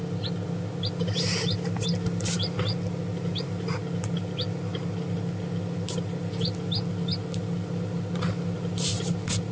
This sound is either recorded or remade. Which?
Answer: recorded